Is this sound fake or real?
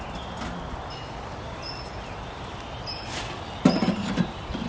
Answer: real